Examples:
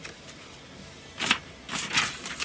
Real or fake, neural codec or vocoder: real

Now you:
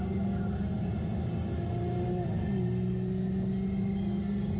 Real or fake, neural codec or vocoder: real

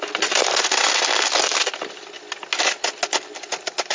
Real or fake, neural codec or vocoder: real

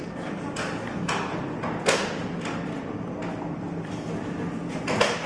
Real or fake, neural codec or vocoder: real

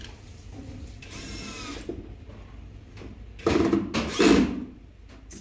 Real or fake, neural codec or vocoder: real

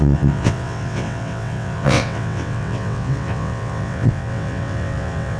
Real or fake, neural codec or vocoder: fake, vocoder, WaveNeXt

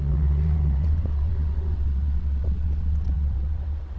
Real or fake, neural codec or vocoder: fake, vocoder, WaveNeXt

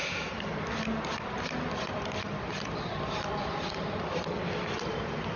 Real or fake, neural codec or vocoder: real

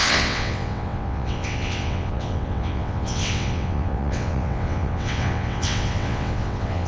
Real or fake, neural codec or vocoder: fake, vocoder, WaveNeXt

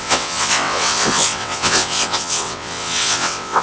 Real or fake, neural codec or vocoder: fake, vocoder, WaveNeXt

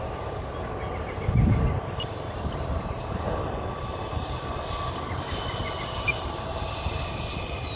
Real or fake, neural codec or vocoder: real